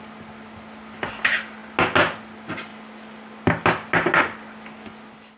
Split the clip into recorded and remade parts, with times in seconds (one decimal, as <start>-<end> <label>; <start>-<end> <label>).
0.0-5.4 recorded